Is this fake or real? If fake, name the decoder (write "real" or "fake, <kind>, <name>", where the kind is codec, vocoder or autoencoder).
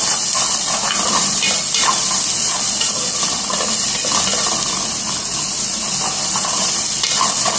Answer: real